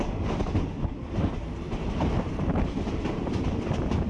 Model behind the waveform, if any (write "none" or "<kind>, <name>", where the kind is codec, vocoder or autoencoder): none